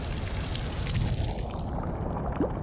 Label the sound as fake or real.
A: real